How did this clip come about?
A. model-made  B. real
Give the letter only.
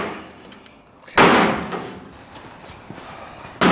B